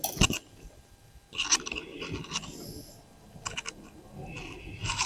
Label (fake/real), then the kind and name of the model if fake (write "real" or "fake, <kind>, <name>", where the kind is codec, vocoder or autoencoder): real